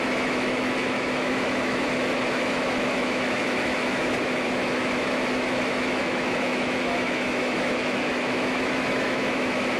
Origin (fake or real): fake